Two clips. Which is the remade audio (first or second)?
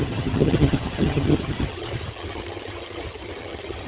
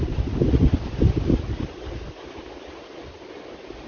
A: first